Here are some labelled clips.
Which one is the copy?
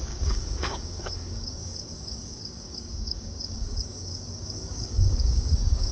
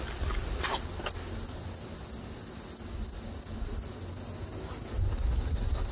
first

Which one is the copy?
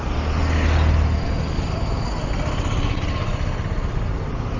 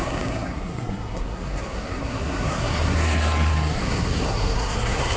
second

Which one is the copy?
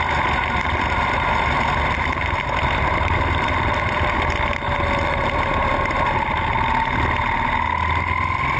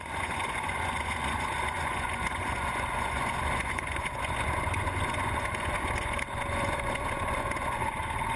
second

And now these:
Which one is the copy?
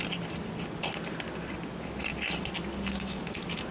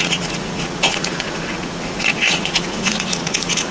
second